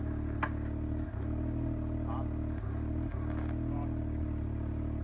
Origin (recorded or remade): recorded